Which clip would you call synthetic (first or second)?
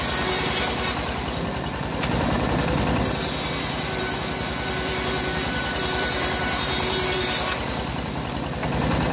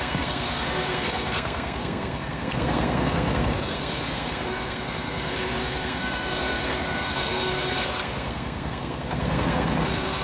second